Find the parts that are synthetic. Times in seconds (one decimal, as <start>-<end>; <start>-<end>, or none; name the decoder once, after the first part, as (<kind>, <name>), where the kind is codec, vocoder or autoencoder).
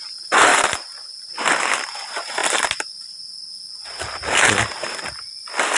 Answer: 0.5-1.3 (vocoder, BigVGAN v2)